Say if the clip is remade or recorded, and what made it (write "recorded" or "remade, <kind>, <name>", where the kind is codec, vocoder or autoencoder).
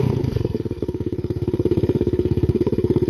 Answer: remade, codec, SNAC